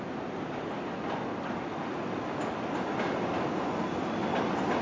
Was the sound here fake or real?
real